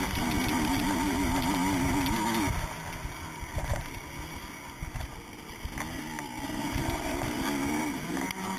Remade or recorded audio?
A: recorded